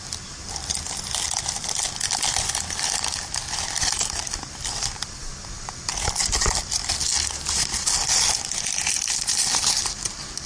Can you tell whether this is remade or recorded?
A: recorded